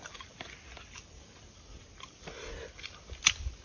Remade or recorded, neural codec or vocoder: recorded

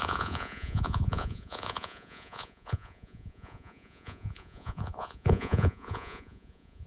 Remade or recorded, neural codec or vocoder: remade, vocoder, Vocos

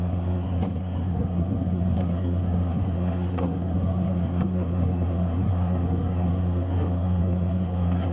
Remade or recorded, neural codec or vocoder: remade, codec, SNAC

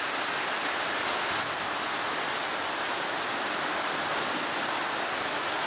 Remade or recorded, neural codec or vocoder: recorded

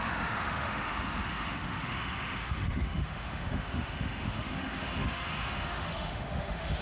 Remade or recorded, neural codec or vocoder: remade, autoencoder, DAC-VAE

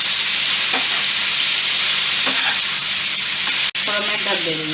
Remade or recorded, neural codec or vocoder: recorded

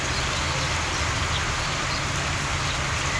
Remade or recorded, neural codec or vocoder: recorded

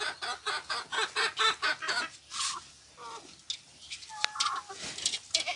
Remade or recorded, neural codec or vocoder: recorded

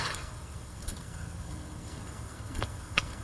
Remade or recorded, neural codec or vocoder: remade, codec, SNAC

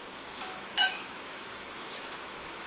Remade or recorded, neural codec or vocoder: remade, autoencoder, DAC-VAE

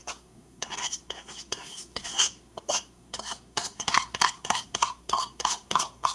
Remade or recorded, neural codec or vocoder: remade, codec, SNAC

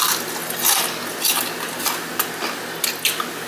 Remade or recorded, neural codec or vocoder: recorded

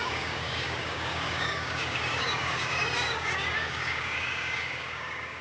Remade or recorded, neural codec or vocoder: remade, codec, DAC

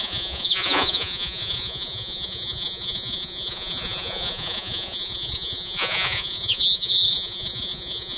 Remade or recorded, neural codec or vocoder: remade, vocoder, Vocos